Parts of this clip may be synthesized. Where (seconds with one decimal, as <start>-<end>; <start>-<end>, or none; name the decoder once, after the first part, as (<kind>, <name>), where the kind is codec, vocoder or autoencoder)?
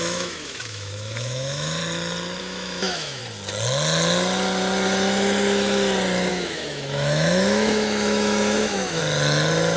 0.0-1.8 (autoencoder, DAC-VAE); 2.4-3.2; 6.3-9.0